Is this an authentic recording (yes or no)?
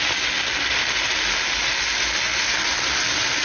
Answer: yes